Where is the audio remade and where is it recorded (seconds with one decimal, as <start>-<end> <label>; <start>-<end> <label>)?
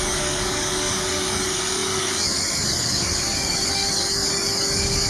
0.0-5.1 remade